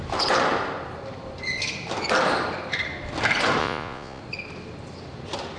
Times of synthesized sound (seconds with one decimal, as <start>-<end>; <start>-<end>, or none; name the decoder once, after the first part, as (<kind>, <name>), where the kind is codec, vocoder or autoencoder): 3.6-4.2 (vocoder, Vocos)